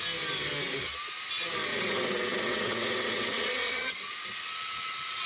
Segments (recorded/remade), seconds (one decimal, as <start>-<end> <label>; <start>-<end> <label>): 0.0-1.7 recorded; 1.7-5.3 remade